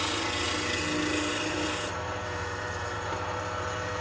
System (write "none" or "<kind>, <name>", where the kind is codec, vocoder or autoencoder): none